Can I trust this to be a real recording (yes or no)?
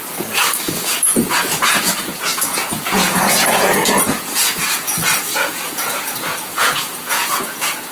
no